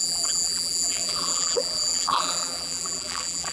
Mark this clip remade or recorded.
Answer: remade